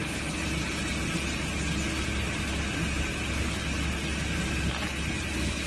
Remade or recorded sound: recorded